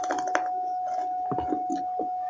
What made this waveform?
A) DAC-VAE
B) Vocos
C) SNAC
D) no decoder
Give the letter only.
D